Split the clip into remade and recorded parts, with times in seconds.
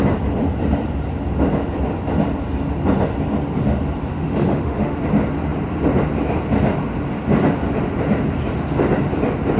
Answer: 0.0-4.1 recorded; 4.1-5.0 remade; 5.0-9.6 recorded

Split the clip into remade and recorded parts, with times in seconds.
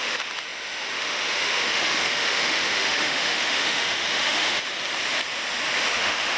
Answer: 0.0-4.7 remade; 4.7-5.9 recorded; 5.9-6.4 remade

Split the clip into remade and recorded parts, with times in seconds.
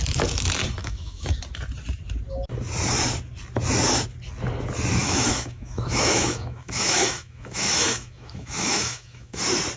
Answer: 0.0-0.8 recorded; 0.8-1.4 remade; 1.4-5.0 recorded; 5.0-9.4 remade; 9.4-9.8 recorded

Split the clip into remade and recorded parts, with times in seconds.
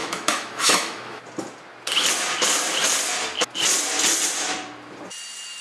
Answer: 0.0-1.2 remade; 1.2-5.6 recorded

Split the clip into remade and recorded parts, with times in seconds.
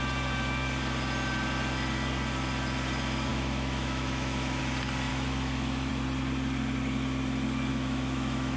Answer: 0.0-3.3 recorded; 3.3-4.6 remade; 4.6-5.1 recorded; 5.1-5.9 remade; 5.9-7.7 recorded; 7.7-8.6 remade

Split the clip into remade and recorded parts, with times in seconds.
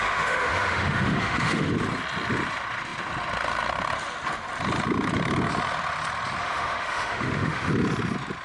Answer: 0.0-1.7 remade; 1.7-6.4 recorded; 6.4-7.7 remade; 7.7-8.4 recorded